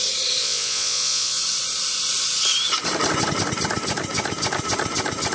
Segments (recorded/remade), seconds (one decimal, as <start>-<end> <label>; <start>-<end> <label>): 0.0-0.4 recorded; 0.4-1.4 remade; 1.4-5.3 recorded